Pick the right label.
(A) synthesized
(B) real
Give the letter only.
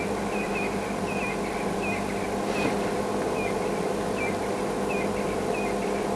B